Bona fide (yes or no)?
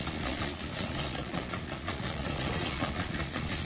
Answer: no